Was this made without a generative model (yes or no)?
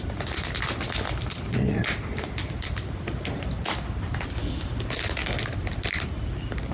yes